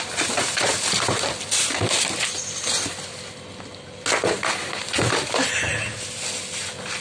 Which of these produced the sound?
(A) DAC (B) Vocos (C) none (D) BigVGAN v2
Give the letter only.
C